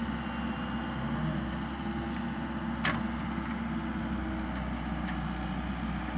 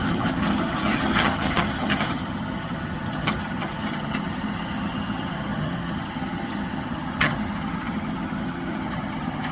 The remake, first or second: second